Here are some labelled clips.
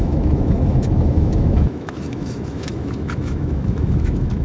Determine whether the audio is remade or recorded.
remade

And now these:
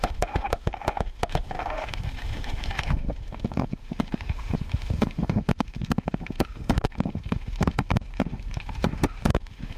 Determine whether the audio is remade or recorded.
remade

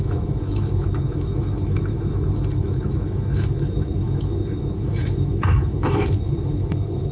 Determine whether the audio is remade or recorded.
remade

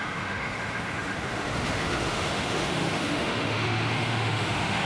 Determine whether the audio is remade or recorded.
remade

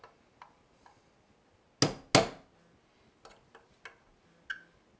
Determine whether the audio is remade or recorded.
recorded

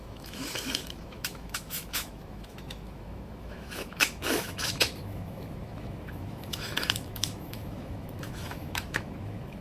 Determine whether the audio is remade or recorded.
remade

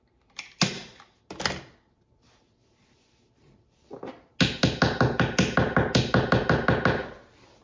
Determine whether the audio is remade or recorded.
recorded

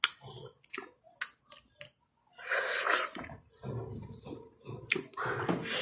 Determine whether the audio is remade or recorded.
recorded